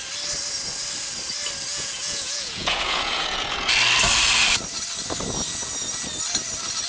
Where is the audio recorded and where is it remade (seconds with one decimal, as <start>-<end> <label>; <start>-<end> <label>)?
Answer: 0.0-1.7 recorded; 1.7-3.7 remade; 3.7-6.9 recorded

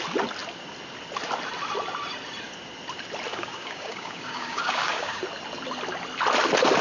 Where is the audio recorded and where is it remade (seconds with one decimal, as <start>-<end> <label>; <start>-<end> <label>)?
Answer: 0.0-3.3 recorded; 3.3-5.2 remade; 5.2-6.8 recorded

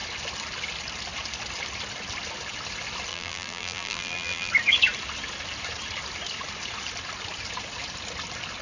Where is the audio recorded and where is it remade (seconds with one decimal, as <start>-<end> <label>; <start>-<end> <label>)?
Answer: 0.0-3.1 recorded; 3.1-4.5 remade; 4.5-8.6 recorded

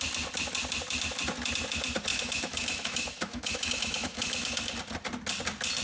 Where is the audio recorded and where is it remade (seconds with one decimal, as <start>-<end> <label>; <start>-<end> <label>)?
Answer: 0.0-2.1 recorded; 2.1-4.6 remade; 4.6-5.8 recorded

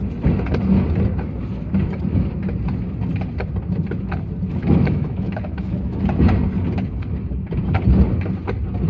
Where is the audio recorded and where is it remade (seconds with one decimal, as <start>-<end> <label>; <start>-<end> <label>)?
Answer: 0.0-4.5 recorded; 4.5-6.0 remade; 6.0-8.9 recorded

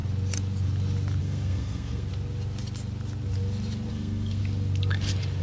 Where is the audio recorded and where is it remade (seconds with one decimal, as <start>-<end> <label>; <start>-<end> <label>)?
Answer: 0.0-1.2 recorded; 1.2-2.1 remade; 2.1-3.9 recorded; 3.9-4.4 remade; 4.4-5.4 recorded

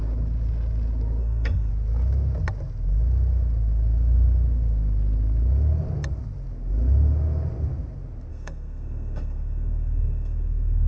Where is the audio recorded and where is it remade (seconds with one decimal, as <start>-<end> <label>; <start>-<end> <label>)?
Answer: 0.0-1.2 recorded; 1.2-1.7 remade; 1.7-8.3 recorded; 8.3-10.9 remade